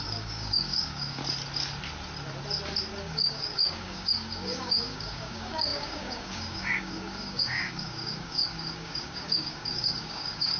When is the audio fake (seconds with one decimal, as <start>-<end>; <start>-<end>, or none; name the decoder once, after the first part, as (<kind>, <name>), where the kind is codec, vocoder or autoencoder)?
0.0-1.2 (codec, DAC); 3.0-10.6